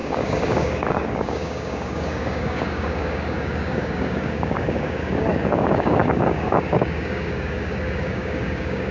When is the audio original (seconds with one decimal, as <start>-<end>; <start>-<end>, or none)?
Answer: none